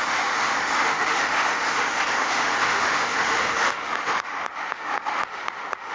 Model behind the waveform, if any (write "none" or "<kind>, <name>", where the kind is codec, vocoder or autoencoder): autoencoder, DAC-VAE